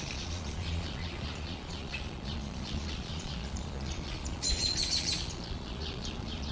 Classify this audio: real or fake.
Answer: fake